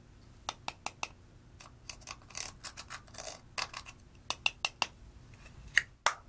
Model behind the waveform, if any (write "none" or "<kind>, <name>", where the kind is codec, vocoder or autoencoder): none